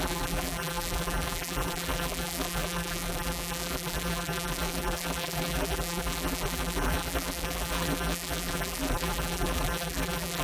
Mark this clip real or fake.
fake